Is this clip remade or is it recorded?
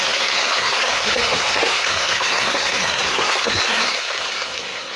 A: remade